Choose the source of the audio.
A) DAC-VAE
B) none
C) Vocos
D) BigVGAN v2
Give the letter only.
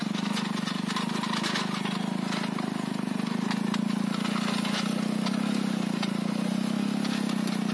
B